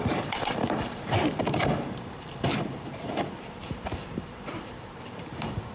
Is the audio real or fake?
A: fake